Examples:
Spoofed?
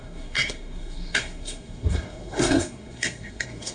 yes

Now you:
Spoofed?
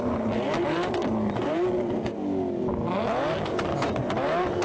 no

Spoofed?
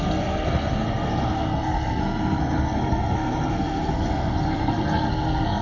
yes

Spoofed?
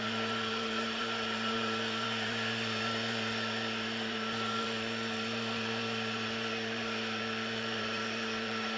yes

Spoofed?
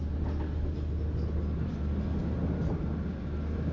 no